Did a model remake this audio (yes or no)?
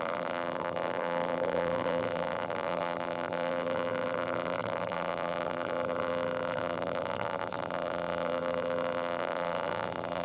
yes